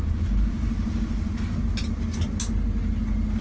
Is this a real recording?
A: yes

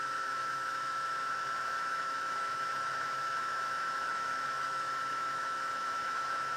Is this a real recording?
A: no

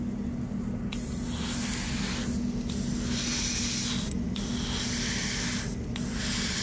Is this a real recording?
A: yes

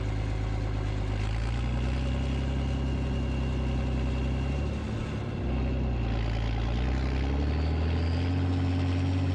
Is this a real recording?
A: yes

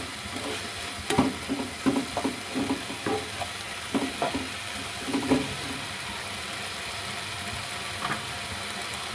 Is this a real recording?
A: yes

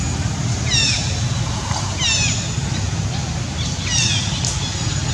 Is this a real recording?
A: yes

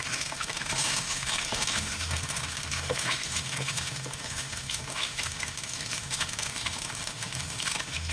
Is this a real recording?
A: no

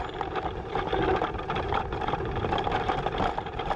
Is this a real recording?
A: no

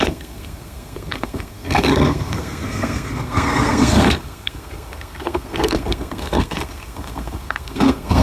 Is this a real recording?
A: no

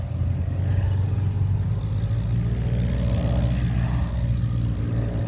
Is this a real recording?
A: yes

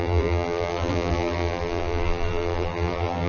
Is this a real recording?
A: no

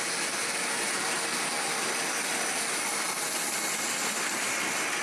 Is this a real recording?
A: yes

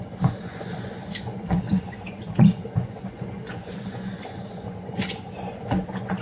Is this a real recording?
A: no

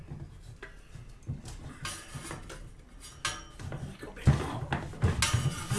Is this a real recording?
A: yes